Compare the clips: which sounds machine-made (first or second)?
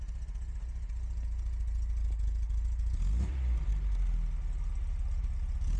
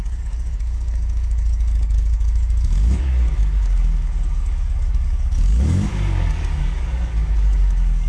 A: second